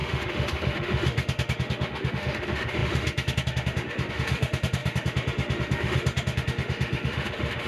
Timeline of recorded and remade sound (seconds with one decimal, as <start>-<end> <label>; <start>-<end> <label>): 0.0-7.7 remade